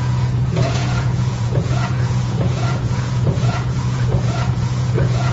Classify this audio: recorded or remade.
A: remade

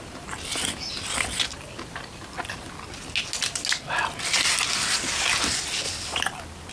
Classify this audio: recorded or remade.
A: recorded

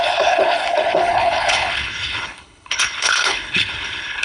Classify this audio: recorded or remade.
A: remade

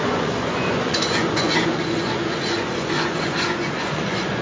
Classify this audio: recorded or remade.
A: remade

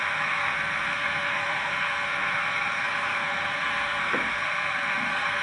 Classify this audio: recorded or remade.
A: remade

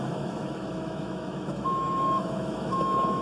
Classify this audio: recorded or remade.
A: remade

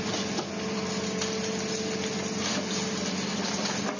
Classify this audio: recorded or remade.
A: recorded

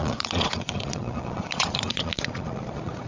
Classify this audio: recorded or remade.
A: remade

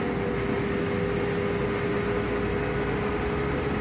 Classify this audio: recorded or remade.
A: recorded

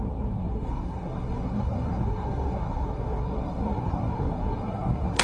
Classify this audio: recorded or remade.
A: remade